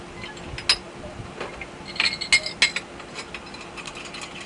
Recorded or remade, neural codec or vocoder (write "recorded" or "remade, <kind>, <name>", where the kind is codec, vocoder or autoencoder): recorded